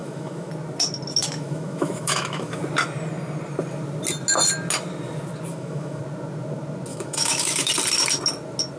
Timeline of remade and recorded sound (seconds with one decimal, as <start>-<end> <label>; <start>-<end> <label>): 0.0-0.5 remade; 0.5-1.2 recorded; 1.2-2.6 remade; 2.6-5.5 recorded; 5.5-6.0 remade; 6.0-6.9 recorded; 6.9-7.7 remade; 7.7-8.8 recorded